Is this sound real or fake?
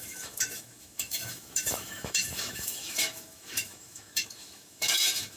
fake